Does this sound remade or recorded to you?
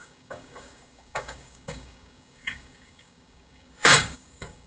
remade